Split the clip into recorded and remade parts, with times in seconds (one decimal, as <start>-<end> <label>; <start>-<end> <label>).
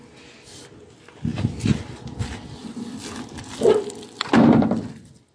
0.0-5.3 recorded